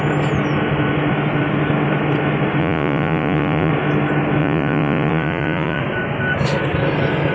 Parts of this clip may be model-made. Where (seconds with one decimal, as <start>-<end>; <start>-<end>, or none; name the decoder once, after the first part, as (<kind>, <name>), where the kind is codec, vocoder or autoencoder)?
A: 2.6-3.7 (vocoder, Vocos); 4.4-5.8